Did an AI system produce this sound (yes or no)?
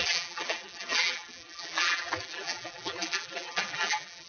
yes